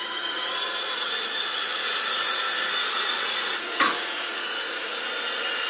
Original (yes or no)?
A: no